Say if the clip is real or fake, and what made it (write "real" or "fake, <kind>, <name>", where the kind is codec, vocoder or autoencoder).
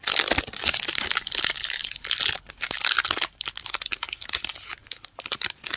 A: real